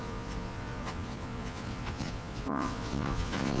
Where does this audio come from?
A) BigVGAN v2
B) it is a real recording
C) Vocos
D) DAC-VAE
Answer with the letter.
C